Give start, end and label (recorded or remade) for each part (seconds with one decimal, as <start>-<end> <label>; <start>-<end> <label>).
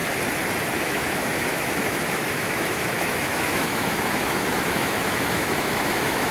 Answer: 0.0-0.8 recorded; 0.8-6.3 remade